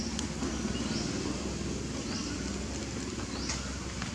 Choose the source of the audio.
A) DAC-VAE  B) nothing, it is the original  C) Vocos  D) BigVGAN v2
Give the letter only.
B